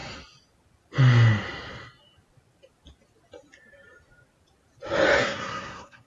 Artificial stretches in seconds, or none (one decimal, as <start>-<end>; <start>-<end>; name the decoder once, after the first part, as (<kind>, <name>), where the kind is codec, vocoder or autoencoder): 5.2-6.1 (codec, SNAC)